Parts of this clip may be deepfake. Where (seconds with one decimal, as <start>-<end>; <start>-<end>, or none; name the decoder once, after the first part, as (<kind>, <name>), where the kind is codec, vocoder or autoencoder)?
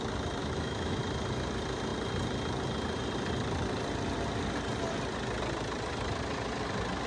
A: 0.4-1.0 (autoencoder, DAC-VAE)